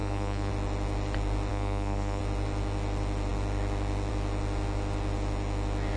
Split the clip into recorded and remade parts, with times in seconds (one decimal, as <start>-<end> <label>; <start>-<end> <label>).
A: 0.0-0.5 remade; 0.5-1.5 recorded; 1.5-2.2 remade; 2.2-6.0 recorded